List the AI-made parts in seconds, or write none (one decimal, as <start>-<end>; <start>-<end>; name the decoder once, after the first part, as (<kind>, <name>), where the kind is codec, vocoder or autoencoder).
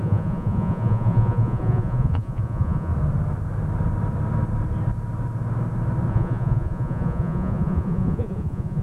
0.0-2.9 (vocoder, Vocos); 6.1-8.8